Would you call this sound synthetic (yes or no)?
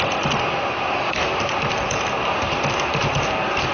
no